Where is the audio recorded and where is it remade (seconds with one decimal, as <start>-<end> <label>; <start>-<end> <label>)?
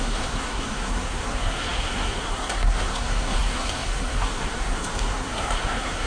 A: 0.0-6.1 remade